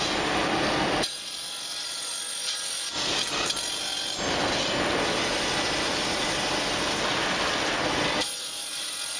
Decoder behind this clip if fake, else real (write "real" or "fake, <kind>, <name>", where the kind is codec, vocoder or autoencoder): real